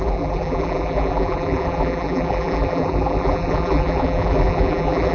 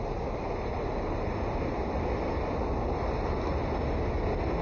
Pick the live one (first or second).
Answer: second